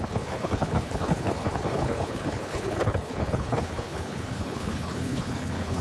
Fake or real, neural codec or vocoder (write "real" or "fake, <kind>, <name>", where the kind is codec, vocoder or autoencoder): fake, codec, HILCodec